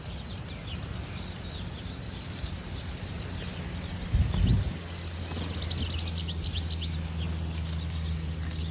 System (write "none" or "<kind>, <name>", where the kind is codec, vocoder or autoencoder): none